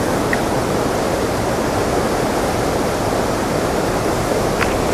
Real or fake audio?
real